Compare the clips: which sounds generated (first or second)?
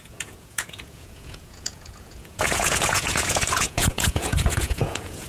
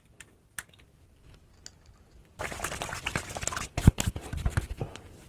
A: first